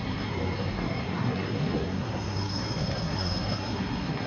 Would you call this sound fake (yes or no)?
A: yes